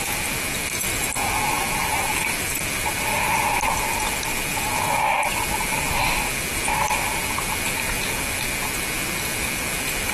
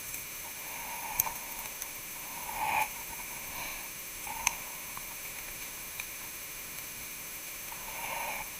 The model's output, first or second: second